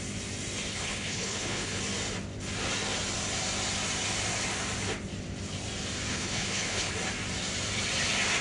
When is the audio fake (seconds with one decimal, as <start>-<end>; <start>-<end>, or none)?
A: 0.7-1.8; 6.1-6.9